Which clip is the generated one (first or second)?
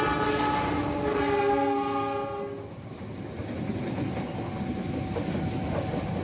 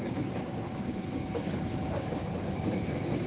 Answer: second